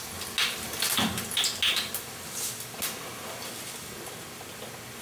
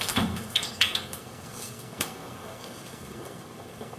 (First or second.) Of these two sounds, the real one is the first